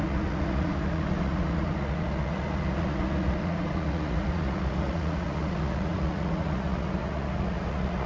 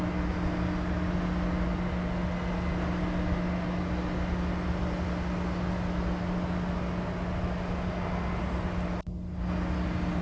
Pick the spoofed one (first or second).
first